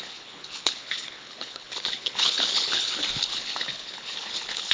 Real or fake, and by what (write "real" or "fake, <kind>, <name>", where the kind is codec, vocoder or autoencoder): fake, codec, HILCodec